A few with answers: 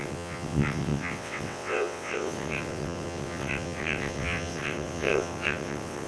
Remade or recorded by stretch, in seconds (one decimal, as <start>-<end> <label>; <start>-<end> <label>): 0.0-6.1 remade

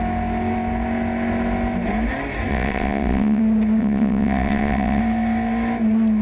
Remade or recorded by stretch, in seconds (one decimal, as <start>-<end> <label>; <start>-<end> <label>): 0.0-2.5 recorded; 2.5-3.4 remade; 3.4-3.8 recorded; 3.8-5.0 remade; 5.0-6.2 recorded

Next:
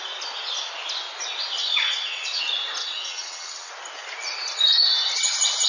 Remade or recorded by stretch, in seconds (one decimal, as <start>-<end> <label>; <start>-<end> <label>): 0.0-1.6 recorded; 1.6-2.4 remade; 2.4-2.8 recorded; 2.8-3.7 remade; 3.7-5.7 recorded

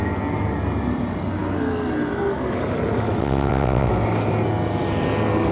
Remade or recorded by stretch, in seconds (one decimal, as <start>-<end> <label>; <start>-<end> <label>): 0.0-3.2 recorded; 3.2-3.9 remade; 3.9-5.5 recorded

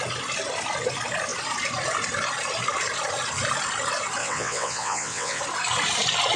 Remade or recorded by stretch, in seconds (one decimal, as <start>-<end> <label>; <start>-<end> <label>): 0.0-4.2 recorded; 4.2-5.4 remade; 5.4-6.4 recorded

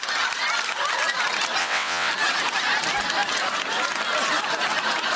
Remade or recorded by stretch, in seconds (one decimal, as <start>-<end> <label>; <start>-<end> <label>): 0.0-1.6 recorded; 1.6-2.1 remade; 2.1-5.2 recorded

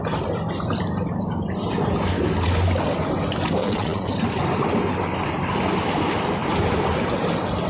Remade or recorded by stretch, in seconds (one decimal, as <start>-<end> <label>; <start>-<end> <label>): 0.0-3.6 recorded; 3.6-4.1 remade; 4.1-7.7 recorded